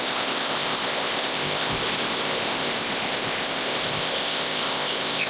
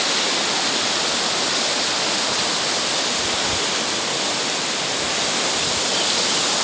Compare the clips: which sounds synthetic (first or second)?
first